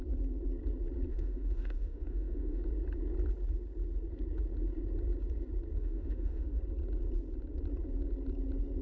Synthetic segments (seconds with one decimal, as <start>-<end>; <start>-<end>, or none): 1.1-2.6; 5.8-6.6